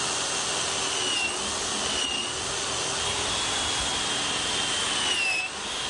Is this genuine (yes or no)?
yes